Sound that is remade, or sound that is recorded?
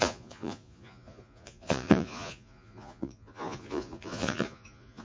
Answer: remade